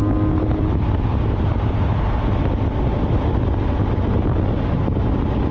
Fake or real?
real